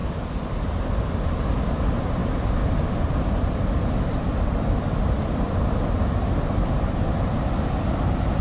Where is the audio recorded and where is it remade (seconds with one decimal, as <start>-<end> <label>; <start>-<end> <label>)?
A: 0.0-1.0 recorded; 1.0-2.2 remade; 2.2-3.5 recorded; 3.5-8.4 remade